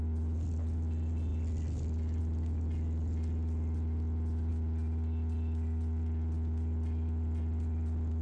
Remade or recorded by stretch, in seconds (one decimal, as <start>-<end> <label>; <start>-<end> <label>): 0.0-8.2 recorded